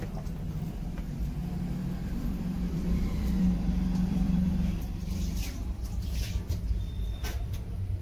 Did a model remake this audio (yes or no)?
yes